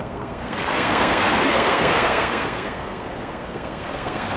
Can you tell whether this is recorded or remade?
remade